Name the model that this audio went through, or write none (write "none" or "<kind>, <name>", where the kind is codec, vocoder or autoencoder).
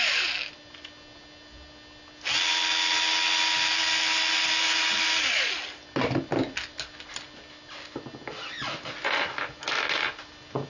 none